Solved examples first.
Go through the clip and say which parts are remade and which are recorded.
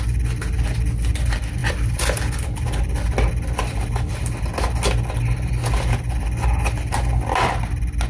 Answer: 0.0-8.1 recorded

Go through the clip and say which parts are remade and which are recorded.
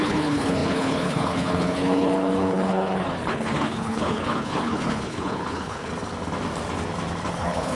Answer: 0.0-5.9 remade; 5.9-7.3 recorded; 7.3-7.8 remade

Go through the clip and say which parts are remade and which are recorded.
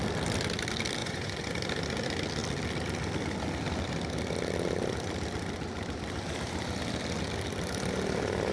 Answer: 0.0-1.0 recorded; 1.0-1.5 remade; 1.5-8.5 recorded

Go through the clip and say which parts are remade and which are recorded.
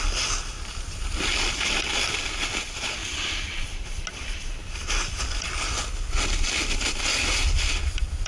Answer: 0.0-8.3 recorded